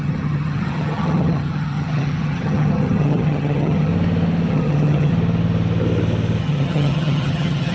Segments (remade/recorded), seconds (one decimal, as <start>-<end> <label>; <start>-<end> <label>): 0.0-3.9 remade; 3.9-4.5 recorded; 4.5-5.1 remade; 5.1-6.4 recorded; 6.4-7.7 remade